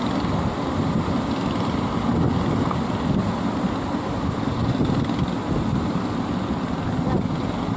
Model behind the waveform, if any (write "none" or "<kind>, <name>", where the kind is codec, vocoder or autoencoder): none